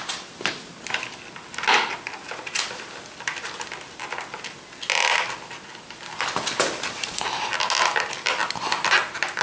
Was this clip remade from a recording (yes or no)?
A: no